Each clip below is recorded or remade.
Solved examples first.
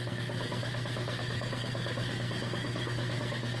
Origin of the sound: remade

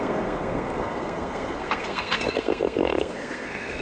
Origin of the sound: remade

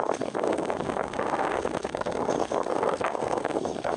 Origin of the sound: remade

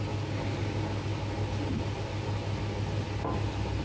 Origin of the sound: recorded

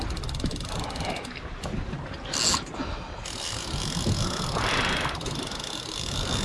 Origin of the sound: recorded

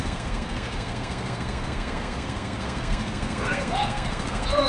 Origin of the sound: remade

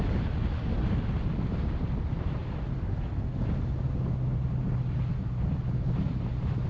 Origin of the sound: recorded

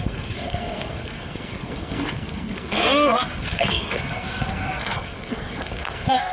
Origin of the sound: remade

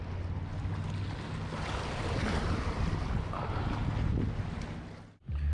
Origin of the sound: recorded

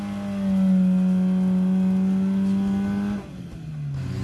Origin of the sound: recorded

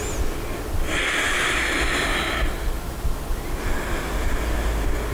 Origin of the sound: recorded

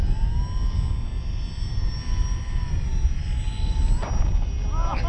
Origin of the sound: recorded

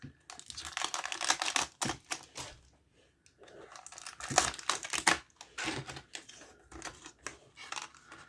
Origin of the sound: recorded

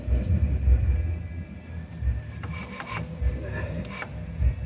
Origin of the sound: recorded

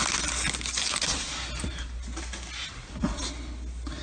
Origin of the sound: recorded